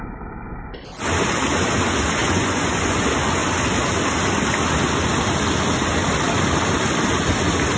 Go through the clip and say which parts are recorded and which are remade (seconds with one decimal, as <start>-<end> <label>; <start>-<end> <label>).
0.0-2.2 recorded; 2.2-3.0 remade; 3.0-7.8 recorded